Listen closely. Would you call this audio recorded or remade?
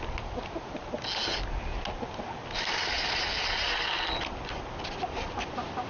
recorded